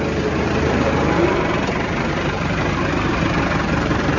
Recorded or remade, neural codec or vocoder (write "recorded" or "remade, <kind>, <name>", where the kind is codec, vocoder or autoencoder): remade, vocoder, BigVGAN v2